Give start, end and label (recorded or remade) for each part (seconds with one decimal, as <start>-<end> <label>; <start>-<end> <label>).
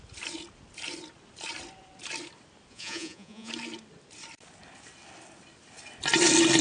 0.0-2.7 recorded; 2.7-3.5 remade; 3.5-6.6 recorded